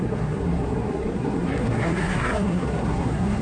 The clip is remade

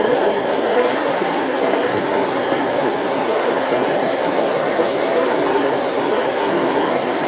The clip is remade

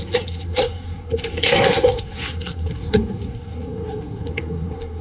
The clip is remade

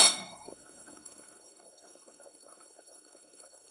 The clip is remade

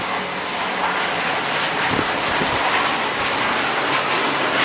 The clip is recorded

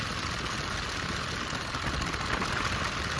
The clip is recorded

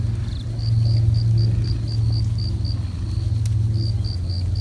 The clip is recorded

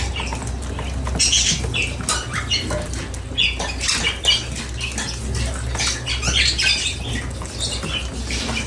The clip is recorded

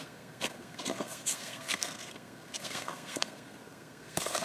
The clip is remade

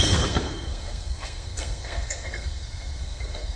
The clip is remade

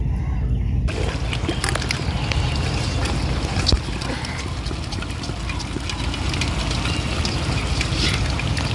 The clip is recorded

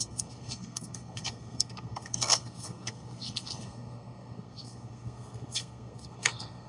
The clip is remade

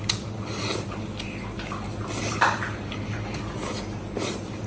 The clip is recorded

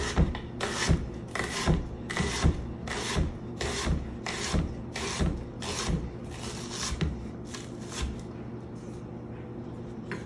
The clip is recorded